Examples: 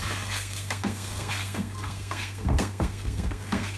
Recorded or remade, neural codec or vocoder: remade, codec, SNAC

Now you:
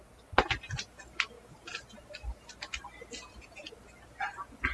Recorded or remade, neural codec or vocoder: recorded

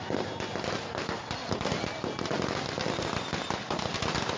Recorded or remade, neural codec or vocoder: recorded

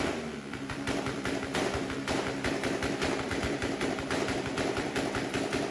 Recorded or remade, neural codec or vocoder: remade, vocoder, BigVGAN v2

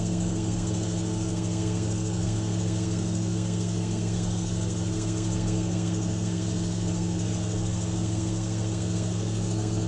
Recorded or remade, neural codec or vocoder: remade, codec, SNAC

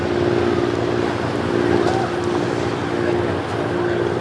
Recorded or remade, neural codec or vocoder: recorded